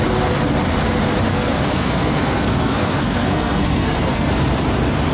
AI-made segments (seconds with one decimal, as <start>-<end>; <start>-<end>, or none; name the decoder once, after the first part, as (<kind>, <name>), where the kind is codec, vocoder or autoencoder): 1.3-4.3 (codec, SNAC)

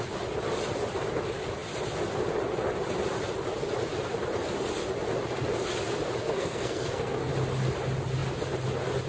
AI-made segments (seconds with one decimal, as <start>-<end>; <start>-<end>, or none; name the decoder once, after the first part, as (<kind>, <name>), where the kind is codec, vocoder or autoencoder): 6.2-7.3 (codec, SNAC)

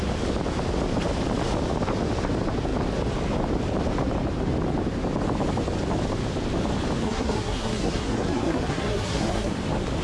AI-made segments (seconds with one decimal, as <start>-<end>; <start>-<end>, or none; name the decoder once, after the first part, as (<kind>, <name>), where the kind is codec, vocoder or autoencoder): 7.0-9.5 (codec, SNAC)

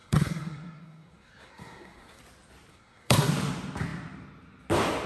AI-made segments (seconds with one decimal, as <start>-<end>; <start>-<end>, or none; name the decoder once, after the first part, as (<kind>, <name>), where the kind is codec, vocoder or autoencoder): 0.0-2.2 (codec, SNAC); 2.7-3.3

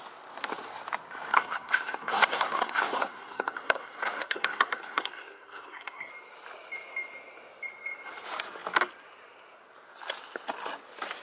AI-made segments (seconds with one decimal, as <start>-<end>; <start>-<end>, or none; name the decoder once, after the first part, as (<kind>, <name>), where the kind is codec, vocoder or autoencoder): 1.3-6.1 (codec, SNAC)